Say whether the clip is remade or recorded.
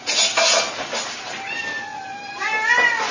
recorded